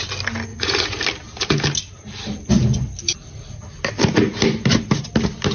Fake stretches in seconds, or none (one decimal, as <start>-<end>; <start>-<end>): 0.5-1.0